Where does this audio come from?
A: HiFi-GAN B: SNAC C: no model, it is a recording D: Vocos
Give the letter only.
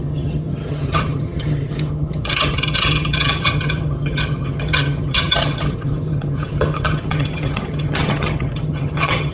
A